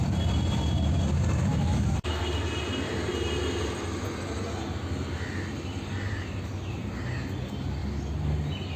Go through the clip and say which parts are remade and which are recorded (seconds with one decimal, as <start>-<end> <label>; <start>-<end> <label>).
0.0-1.5 recorded; 1.5-2.2 remade; 2.2-8.8 recorded